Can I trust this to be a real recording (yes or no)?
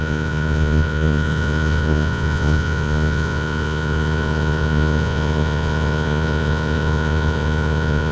no